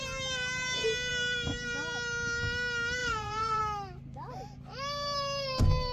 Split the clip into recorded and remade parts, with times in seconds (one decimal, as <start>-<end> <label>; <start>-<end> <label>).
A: 0.0-3.0 recorded; 3.0-3.6 remade; 3.6-5.9 recorded